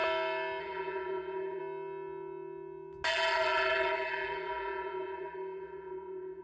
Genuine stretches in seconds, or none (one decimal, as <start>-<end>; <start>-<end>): 0.0-0.6; 1.6-3.1